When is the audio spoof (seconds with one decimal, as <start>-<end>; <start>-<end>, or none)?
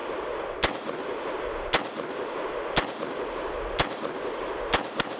none